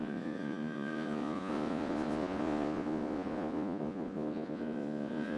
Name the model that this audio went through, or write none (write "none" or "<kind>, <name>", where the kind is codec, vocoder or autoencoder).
vocoder, Vocos